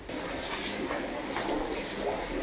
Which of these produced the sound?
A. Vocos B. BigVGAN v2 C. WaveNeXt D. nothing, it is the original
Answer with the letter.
D